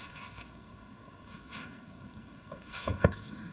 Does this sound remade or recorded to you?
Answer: remade